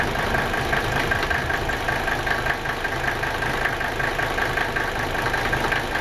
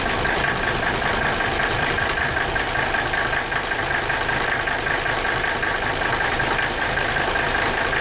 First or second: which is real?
first